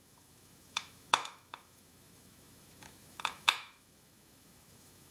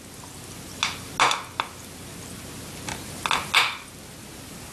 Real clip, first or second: second